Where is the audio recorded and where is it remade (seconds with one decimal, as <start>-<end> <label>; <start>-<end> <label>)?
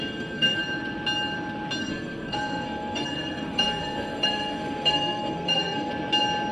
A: 0.0-0.6 remade; 0.6-1.8 recorded; 1.8-5.9 remade; 5.9-6.5 recorded